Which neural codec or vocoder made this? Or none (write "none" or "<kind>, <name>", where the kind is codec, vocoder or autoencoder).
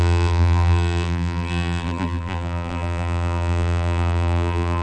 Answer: vocoder, BigVGAN v2